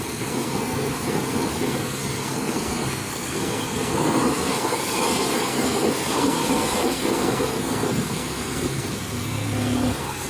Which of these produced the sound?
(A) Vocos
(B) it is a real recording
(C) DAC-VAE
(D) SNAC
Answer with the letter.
D